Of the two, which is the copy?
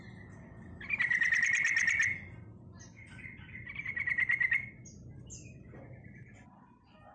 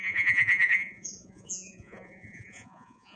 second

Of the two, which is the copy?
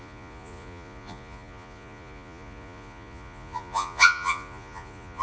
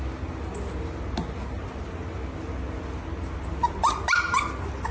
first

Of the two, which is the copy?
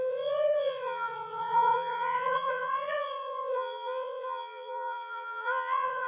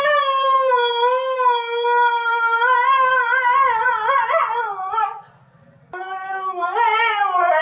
first